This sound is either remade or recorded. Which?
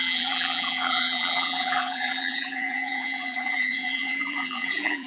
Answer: remade